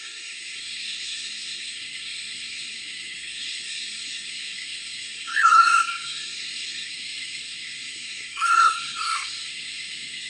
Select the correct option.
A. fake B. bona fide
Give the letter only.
A